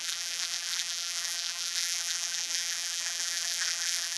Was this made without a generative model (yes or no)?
no